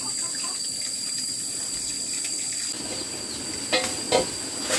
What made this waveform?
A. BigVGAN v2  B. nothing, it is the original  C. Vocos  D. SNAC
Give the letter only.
B